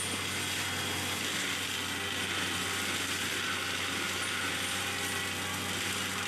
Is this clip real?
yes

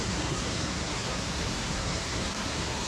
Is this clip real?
no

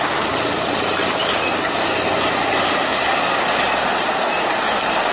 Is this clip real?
yes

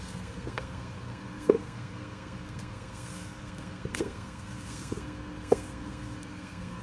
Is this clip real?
no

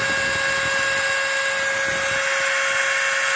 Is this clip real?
yes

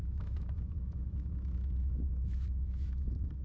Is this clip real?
no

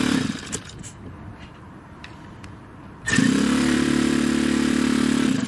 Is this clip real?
no